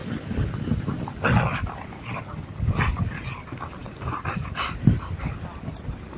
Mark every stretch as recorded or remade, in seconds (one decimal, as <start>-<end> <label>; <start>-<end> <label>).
0.0-3.8 recorded; 3.8-5.7 remade; 5.7-6.2 recorded

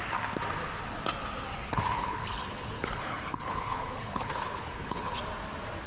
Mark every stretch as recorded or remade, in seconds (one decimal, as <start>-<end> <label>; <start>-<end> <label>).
0.0-1.7 recorded; 1.7-5.2 remade; 5.2-5.9 recorded

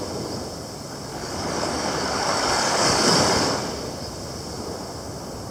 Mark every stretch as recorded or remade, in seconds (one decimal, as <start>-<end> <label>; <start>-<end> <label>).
0.0-1.1 recorded; 1.1-3.6 remade; 3.6-5.5 recorded

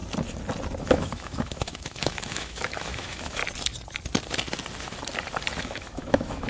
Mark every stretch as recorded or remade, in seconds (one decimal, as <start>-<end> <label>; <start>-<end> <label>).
0.0-0.8 recorded; 0.8-3.4 remade; 3.4-5.6 recorded; 5.6-6.5 remade

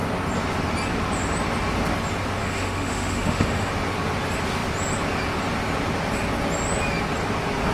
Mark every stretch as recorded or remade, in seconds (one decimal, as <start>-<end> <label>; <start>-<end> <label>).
0.0-2.4 recorded; 2.4-3.7 remade; 3.7-7.7 recorded

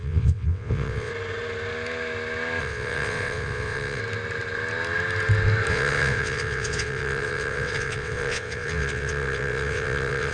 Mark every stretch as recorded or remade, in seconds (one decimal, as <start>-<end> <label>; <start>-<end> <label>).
0.0-1.1 remade; 1.1-2.6 recorded; 2.6-4.0 remade; 4.0-5.7 recorded; 5.7-10.3 remade

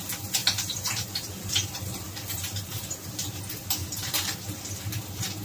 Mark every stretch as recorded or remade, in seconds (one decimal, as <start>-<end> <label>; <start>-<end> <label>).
0.0-0.4 recorded; 0.4-3.4 remade; 3.4-3.8 recorded; 3.8-4.6 remade; 4.6-5.4 recorded